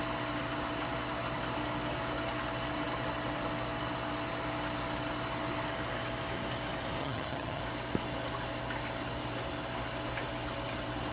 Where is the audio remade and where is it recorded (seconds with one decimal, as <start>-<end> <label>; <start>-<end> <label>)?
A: 0.0-7.0 recorded; 7.0-7.6 remade; 7.6-11.1 recorded